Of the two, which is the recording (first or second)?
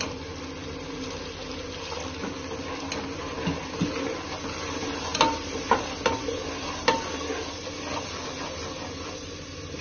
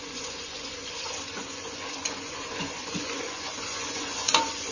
first